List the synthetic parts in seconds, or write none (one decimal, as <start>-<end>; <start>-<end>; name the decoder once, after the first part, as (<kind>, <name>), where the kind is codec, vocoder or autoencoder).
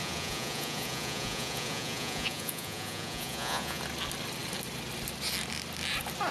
0.0-3.8 (vocoder, Vocos)